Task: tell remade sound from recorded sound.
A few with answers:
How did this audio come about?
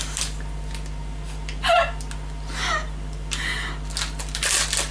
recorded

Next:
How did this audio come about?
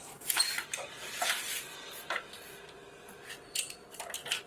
recorded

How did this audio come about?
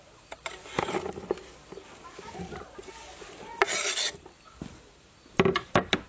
recorded